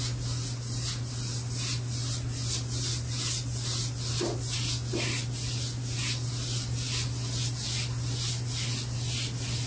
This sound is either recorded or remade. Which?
recorded